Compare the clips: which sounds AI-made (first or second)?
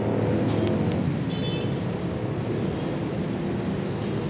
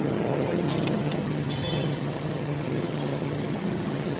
second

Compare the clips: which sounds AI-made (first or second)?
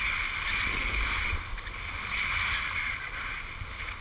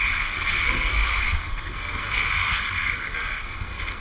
second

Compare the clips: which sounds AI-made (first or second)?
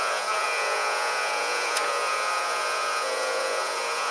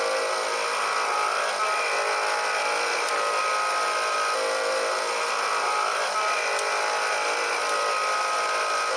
first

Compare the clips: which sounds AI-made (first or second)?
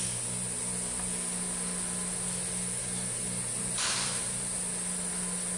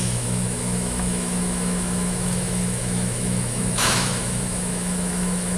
second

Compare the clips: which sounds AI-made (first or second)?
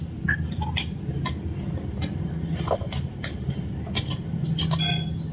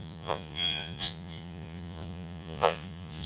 second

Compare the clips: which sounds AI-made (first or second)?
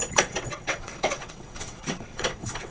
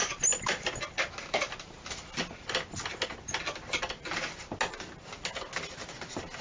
first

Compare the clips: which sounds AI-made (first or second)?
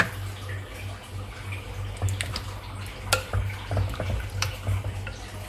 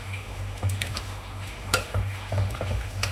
second